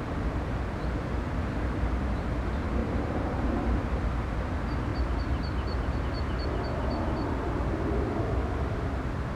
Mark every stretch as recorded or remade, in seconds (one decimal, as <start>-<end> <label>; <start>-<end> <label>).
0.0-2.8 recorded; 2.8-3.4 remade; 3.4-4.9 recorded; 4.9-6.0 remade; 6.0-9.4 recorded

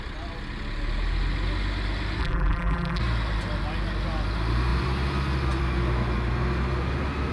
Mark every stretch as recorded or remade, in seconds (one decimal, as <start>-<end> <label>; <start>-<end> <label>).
0.0-2.2 recorded; 2.2-3.0 remade; 3.0-7.3 recorded

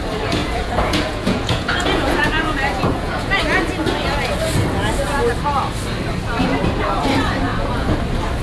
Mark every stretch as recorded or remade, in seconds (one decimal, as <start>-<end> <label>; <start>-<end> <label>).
0.0-0.4 recorded; 0.4-3.4 remade; 3.4-7.5 recorded; 7.5-8.0 remade; 8.0-8.4 recorded

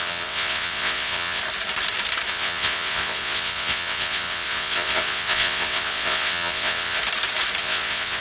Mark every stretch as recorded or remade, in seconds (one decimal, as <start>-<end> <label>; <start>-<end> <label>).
0.0-1.4 remade; 1.4-2.3 recorded; 2.3-7.0 remade; 7.0-7.6 recorded; 7.6-8.2 remade

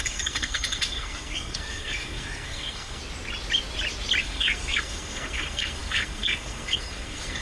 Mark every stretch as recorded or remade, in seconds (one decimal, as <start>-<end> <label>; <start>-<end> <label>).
0.0-3.0 remade; 3.0-4.2 recorded; 4.2-7.4 remade